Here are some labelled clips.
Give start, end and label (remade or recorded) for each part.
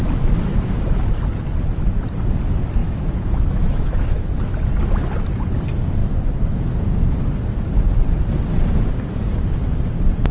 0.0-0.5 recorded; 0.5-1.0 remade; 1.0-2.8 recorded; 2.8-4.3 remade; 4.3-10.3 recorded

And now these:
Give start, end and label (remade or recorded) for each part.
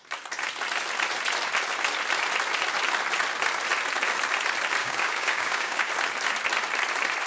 0.0-4.8 recorded; 4.8-5.9 remade; 5.9-7.3 recorded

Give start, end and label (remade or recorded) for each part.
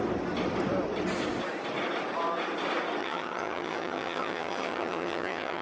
0.0-3.0 recorded; 3.0-5.6 remade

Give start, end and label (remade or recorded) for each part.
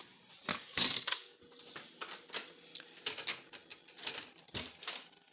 0.0-0.5 recorded; 0.5-1.4 remade; 1.4-5.3 recorded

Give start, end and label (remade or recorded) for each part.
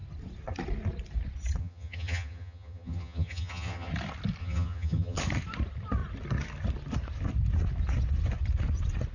0.0-1.6 recorded; 1.6-3.9 remade; 3.9-4.4 recorded; 4.4-5.2 remade; 5.2-9.1 recorded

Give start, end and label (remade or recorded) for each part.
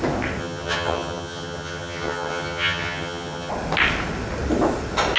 0.0-0.4 recorded; 0.4-3.5 remade; 3.5-5.2 recorded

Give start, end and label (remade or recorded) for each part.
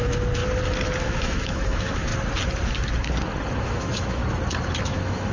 0.0-0.4 remade; 0.4-1.0 recorded; 1.0-2.1 remade; 2.1-3.6 recorded; 3.6-4.2 remade; 4.2-4.8 recorded; 4.8-5.3 remade